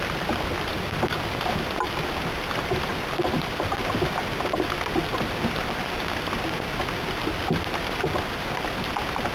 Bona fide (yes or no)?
yes